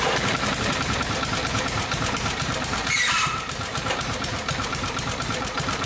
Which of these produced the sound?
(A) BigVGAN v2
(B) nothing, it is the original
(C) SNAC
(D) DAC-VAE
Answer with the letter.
A